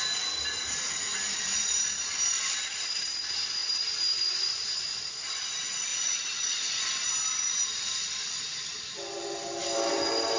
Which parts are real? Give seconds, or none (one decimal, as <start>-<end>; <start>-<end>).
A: 0.0-5.9; 6.9-10.4